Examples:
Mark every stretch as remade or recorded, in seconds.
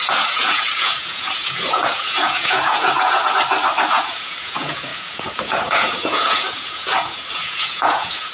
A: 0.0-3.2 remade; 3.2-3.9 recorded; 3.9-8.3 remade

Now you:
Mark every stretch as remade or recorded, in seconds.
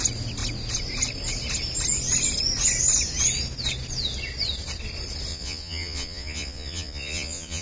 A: 0.0-5.3 recorded; 5.3-7.6 remade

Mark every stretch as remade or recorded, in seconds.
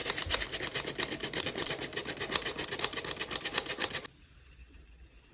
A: 0.0-1.4 recorded; 1.4-1.9 remade; 1.9-4.1 recorded; 4.1-5.3 remade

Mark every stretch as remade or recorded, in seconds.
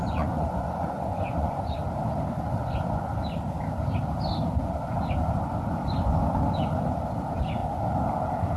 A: 0.0-1.8 remade; 1.8-8.6 recorded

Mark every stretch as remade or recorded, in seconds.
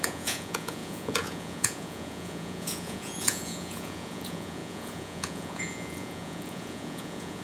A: 0.0-7.4 remade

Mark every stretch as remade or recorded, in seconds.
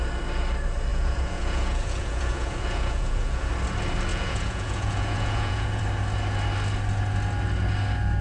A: 0.0-0.9 recorded; 0.9-3.5 remade; 3.5-4.1 recorded; 4.1-5.8 remade; 5.8-8.2 recorded